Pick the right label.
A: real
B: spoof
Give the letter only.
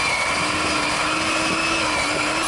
A